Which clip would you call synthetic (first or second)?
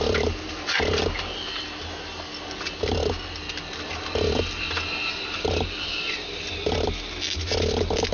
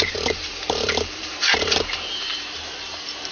second